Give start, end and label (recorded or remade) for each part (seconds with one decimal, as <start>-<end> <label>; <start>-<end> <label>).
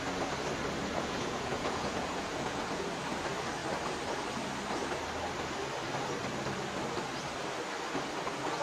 0.0-0.9 recorded; 0.9-2.8 remade; 2.8-8.6 recorded